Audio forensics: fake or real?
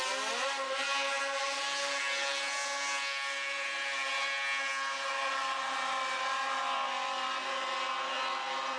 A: real